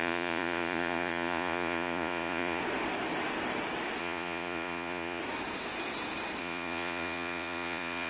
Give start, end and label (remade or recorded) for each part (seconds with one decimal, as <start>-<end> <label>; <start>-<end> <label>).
0.0-2.6 remade; 2.6-4.0 recorded; 4.0-5.2 remade; 5.2-6.4 recorded; 6.4-8.1 remade